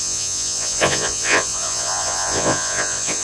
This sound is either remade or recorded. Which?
remade